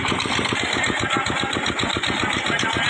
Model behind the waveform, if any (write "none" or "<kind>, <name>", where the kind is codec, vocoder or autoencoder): none